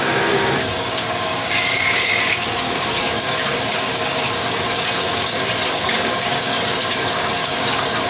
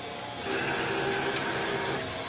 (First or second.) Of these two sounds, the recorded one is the second